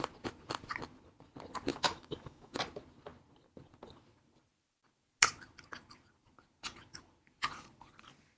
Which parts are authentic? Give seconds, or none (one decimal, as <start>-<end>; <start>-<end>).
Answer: 0.0-1.7; 2.6-8.4